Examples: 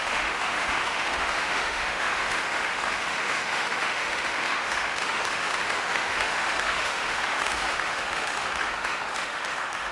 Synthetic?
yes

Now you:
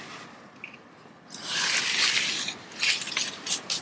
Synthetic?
no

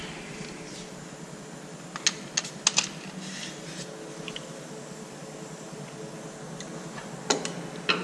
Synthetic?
no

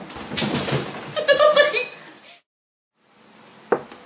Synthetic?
no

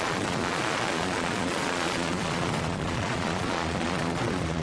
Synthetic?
yes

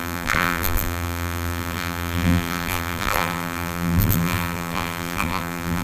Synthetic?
yes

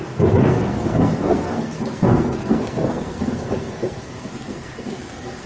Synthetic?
yes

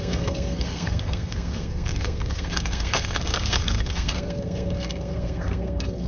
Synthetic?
yes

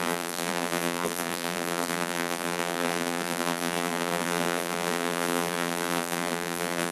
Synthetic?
yes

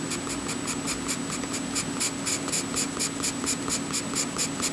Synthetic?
no